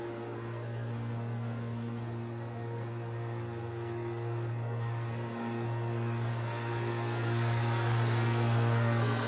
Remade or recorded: remade